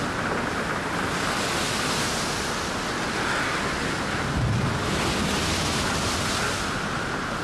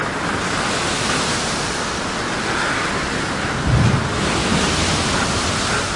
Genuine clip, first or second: first